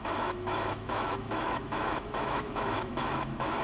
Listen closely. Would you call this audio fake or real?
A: fake